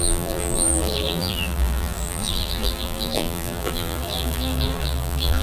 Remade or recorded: remade